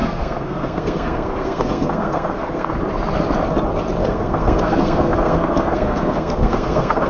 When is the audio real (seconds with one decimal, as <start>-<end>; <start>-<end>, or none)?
2.7-4.0